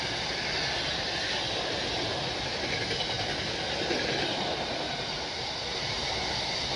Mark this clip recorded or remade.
recorded